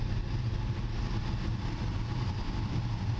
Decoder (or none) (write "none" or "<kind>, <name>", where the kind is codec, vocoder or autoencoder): none